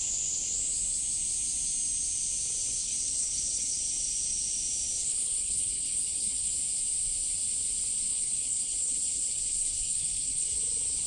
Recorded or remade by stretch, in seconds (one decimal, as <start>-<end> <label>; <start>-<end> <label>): 0.0-2.8 recorded; 2.8-3.8 remade; 3.8-5.0 recorded; 5.0-6.5 remade; 6.5-8.1 recorded; 8.1-10.6 remade; 10.6-11.1 recorded